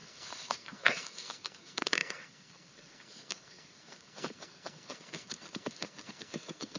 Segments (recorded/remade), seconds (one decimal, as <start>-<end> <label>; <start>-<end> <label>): 0.0-6.8 remade